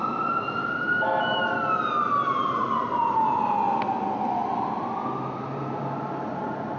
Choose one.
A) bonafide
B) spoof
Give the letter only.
A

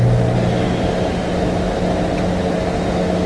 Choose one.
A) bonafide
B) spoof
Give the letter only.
A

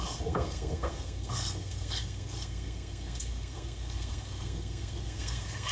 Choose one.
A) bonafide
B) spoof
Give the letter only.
B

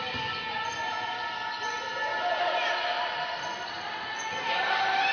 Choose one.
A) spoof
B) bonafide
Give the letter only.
B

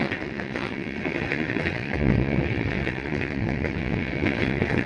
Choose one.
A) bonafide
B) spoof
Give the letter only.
B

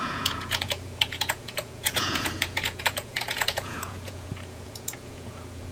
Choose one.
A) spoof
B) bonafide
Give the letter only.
A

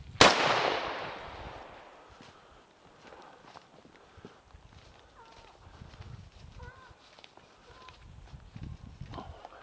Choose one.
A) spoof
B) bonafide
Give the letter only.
B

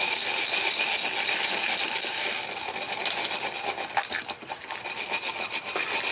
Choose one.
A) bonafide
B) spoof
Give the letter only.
A